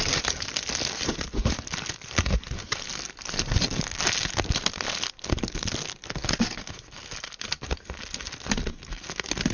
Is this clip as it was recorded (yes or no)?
yes